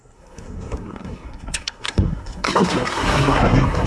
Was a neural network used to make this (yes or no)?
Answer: yes